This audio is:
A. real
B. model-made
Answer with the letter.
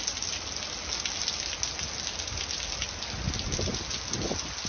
A